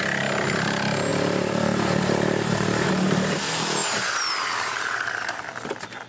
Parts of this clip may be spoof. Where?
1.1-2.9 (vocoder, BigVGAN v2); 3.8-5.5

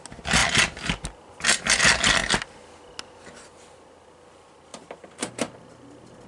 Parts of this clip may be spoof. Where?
4.7-5.3 (vocoder, BigVGAN v2)

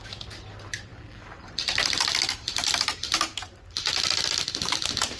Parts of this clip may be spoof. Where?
0.9-3.2 (vocoder, BigVGAN v2)

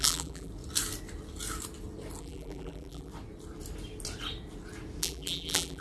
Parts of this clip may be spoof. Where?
0.0-0.5 (vocoder, BigVGAN v2); 2.2-3.1; 5.0-5.8

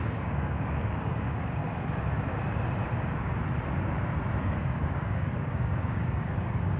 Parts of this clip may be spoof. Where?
0.0-1.6 (codec, DAC); 2.8-3.4; 4.4-6.8

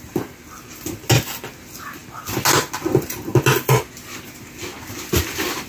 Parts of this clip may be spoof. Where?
none